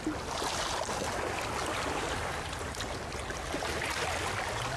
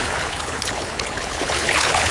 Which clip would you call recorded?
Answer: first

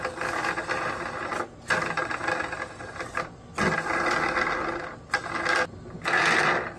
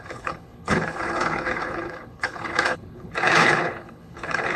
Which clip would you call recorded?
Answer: first